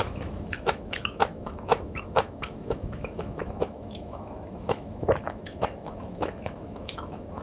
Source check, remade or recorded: remade